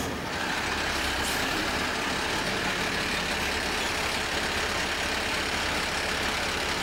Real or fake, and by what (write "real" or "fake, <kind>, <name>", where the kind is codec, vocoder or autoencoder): real